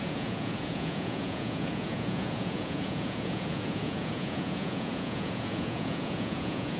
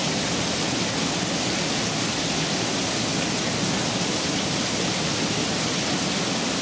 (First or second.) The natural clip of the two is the second